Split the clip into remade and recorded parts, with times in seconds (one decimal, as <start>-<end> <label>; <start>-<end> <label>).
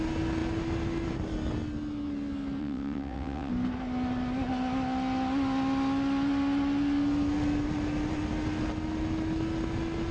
0.0-2.6 recorded; 2.6-3.5 remade; 3.5-10.1 recorded